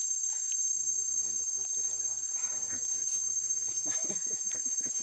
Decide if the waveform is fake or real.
fake